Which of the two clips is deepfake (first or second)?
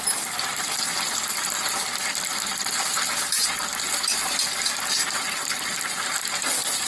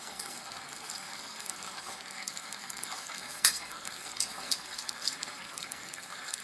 second